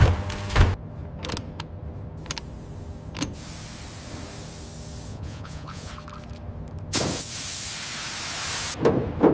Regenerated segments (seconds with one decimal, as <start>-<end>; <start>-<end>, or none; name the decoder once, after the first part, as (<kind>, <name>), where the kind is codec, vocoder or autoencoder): 5.1-5.9 (vocoder, Vocos)